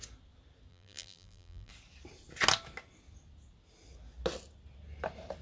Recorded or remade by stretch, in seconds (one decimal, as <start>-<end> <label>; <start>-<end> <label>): 0.0-0.7 recorded; 0.7-1.7 remade; 1.7-5.4 recorded